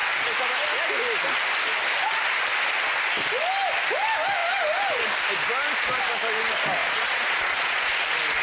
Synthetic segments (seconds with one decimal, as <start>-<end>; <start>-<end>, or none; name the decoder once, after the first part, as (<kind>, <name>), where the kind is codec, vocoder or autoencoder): 6.8-7.9 (vocoder, Vocos)